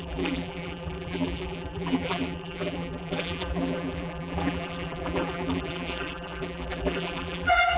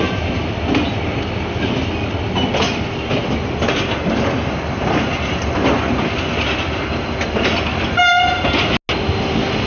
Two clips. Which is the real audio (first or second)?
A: second